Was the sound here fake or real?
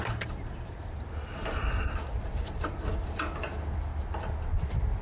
real